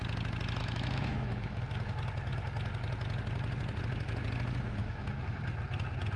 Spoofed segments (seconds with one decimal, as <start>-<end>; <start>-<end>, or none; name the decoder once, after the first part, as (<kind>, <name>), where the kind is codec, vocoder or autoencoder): 0.6-1.6 (autoencoder, DAC-VAE); 4.8-5.4